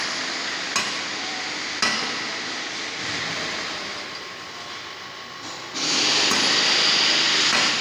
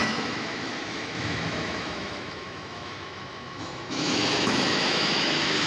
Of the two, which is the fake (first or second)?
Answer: second